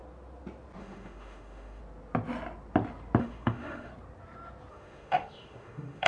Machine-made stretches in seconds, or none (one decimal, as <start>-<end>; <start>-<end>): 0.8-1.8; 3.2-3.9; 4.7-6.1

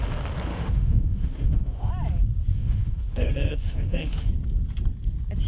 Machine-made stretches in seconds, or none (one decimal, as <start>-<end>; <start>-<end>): 0.5-1.9; 2.5-4.3

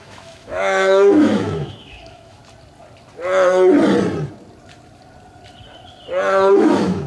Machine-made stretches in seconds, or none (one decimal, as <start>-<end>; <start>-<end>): 0.0-2.4; 6.5-7.1

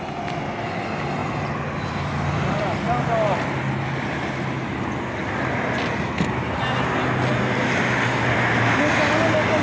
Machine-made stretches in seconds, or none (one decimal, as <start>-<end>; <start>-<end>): none

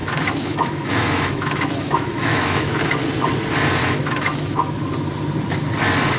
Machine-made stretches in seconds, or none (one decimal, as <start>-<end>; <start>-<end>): 0.0-2.8; 3.8-4.8